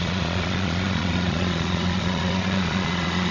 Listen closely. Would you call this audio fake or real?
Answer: fake